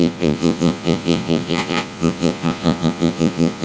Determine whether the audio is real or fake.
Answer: fake